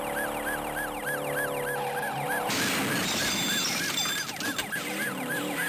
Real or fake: real